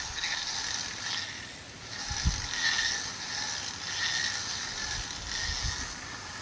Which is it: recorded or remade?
recorded